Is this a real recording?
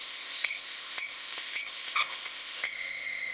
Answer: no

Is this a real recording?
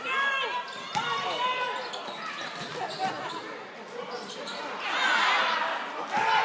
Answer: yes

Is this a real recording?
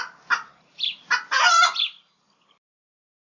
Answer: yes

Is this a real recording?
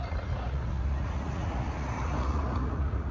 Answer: no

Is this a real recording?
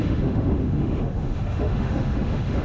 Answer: no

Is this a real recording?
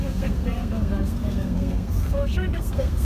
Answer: no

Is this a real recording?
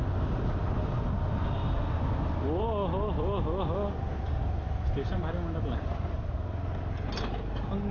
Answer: yes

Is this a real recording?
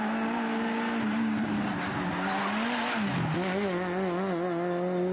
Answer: yes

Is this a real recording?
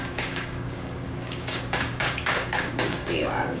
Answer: no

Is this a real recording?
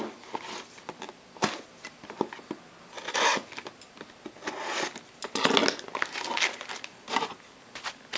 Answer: yes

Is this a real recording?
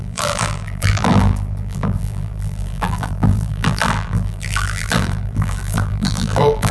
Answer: no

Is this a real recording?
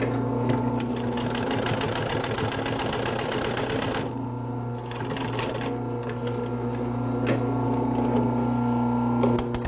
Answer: yes